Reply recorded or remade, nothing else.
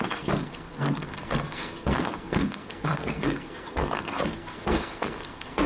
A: remade